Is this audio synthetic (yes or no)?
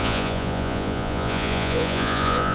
yes